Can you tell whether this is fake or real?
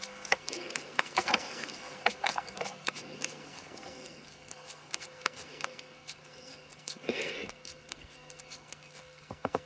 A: fake